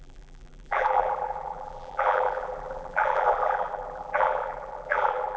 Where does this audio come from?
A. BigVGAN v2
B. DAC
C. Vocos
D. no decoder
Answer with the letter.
A